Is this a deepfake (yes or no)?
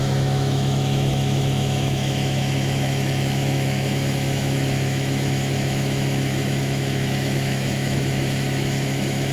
yes